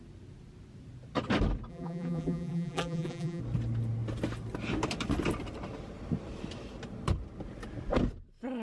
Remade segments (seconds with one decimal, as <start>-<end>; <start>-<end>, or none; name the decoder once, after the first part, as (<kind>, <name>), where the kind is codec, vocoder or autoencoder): 1.7-3.4 (vocoder, BigVGAN v2)